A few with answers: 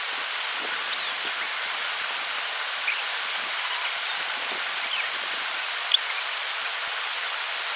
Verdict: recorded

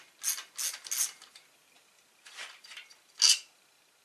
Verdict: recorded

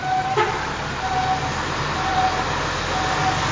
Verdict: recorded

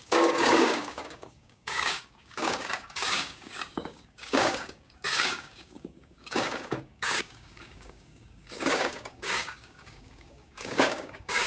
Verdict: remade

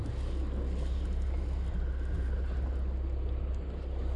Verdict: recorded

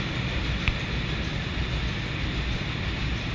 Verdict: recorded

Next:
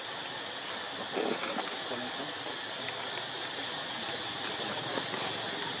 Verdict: recorded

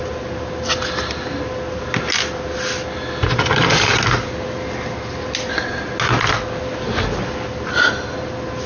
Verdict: recorded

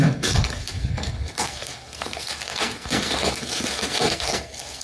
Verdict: remade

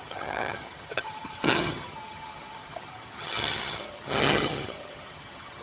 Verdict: remade